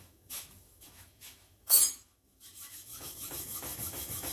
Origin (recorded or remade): remade